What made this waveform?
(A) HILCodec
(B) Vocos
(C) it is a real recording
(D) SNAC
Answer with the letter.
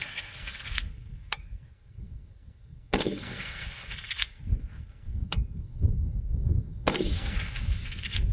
D